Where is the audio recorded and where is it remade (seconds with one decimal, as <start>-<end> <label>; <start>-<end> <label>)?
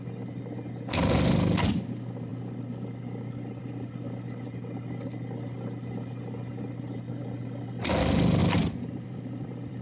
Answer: 0.0-7.2 recorded; 7.2-8.0 remade; 8.0-8.4 recorded; 8.4-9.8 remade